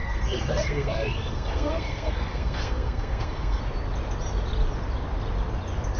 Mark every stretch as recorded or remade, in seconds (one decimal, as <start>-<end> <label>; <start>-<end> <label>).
0.0-3.6 remade; 3.6-6.0 recorded